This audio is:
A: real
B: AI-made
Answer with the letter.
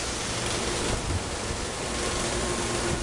A